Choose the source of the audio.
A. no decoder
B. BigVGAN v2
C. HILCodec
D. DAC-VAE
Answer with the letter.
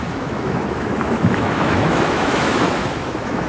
D